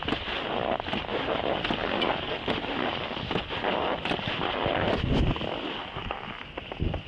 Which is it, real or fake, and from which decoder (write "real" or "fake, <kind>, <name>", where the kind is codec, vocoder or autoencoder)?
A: real